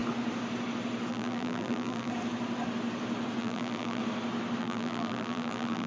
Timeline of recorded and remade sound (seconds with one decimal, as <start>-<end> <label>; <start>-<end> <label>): 0.0-1.1 recorded; 1.1-2.1 remade; 2.1-3.4 recorded; 3.4-4.0 remade; 4.0-4.6 recorded; 4.6-5.9 remade